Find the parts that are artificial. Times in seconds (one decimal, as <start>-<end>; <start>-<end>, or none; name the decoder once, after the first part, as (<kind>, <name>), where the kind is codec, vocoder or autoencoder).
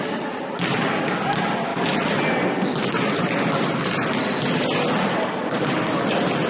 none